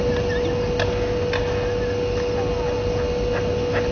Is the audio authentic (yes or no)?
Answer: yes